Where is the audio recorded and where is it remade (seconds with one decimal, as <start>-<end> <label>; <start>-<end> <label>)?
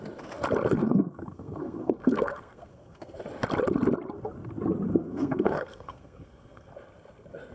0.0-0.8 recorded; 0.8-3.2 remade; 3.2-4.9 recorded; 4.9-6.7 remade; 6.7-7.5 recorded